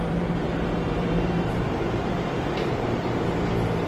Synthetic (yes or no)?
yes